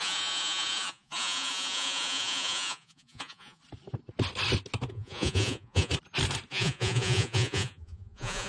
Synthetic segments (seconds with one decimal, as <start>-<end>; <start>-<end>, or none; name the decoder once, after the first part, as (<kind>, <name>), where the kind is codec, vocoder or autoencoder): 0.0-3.6 (vocoder, Vocos); 4.9-5.9; 6.5-8.5